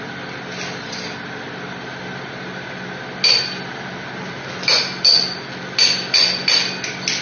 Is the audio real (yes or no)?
yes